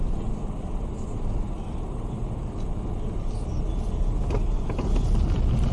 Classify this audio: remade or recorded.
recorded